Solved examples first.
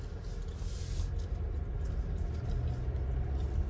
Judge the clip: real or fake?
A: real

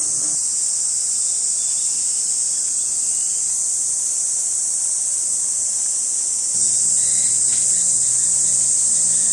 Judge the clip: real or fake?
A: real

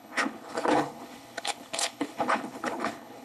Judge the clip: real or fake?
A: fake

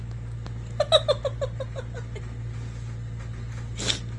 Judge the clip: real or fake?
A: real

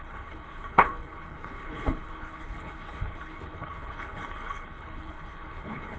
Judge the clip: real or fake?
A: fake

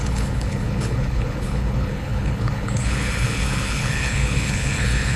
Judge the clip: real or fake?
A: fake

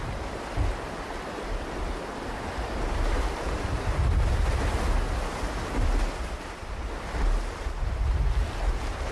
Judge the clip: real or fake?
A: real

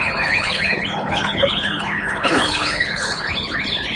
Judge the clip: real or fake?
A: fake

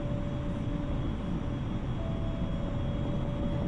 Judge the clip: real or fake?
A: real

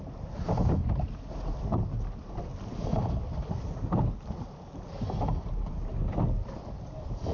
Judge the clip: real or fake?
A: real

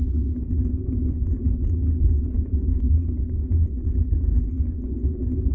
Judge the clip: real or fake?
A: fake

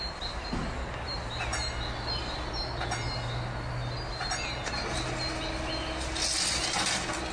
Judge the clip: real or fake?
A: real